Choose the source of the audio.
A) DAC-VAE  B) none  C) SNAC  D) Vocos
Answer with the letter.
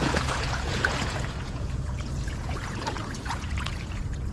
D